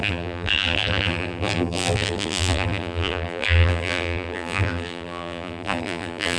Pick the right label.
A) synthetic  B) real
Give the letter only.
A